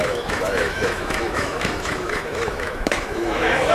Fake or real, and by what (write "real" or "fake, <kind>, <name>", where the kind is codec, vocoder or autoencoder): fake, autoencoder, DAC-VAE